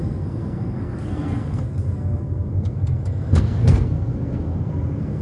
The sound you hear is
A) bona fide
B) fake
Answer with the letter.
B